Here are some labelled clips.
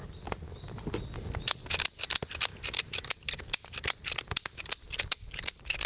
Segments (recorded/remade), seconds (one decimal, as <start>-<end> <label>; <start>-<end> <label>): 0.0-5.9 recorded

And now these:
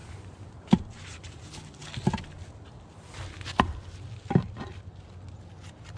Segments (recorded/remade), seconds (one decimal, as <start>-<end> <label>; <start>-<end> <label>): 0.0-0.6 remade; 0.6-6.0 recorded

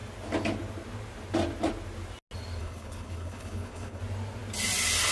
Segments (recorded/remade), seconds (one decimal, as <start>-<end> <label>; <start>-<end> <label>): 0.0-2.6 recorded; 2.6-4.0 remade; 4.0-5.1 recorded

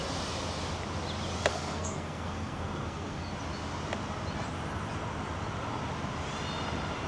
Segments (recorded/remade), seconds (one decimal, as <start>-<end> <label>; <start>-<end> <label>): 0.0-1.5 recorded; 1.5-3.3 remade; 3.3-7.1 recorded

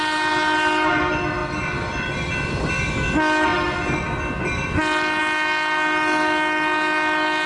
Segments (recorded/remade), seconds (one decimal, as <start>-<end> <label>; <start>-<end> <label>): 0.0-7.5 recorded